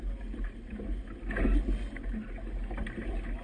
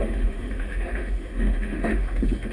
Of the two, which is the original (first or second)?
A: first